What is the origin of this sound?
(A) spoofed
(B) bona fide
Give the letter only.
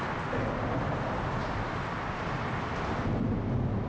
B